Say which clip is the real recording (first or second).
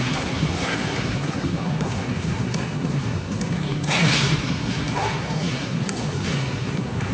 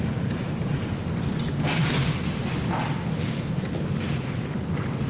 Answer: second